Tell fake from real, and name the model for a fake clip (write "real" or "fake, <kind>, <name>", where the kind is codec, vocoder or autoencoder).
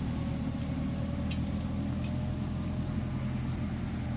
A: real